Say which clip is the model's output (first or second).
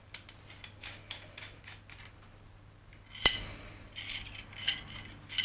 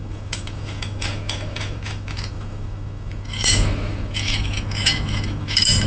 second